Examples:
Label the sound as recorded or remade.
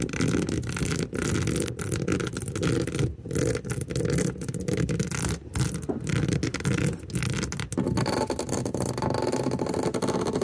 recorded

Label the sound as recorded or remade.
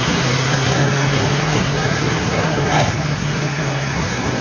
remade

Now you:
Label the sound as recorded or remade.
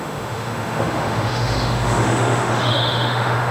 remade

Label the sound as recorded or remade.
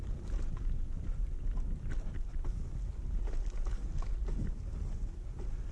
recorded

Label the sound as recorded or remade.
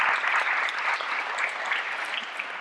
recorded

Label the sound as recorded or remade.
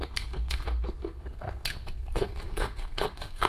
remade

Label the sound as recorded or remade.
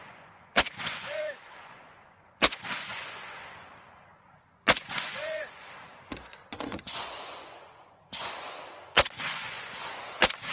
remade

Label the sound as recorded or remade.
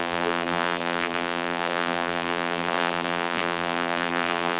remade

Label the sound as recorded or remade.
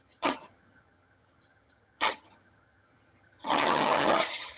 remade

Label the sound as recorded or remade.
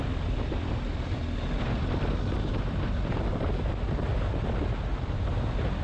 recorded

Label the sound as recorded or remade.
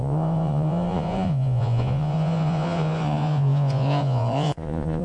remade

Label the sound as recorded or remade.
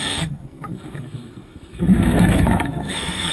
remade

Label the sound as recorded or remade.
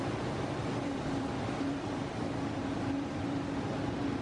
remade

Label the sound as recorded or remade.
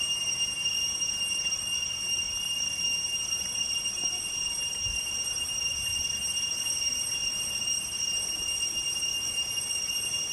recorded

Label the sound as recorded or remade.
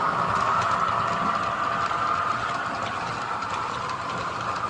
recorded